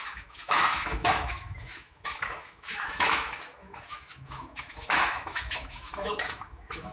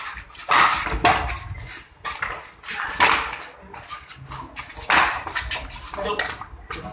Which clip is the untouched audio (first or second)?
second